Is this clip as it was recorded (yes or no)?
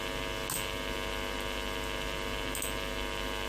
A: yes